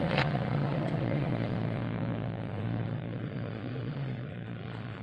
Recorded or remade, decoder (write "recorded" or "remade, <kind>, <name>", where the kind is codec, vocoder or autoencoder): remade, vocoder, Vocos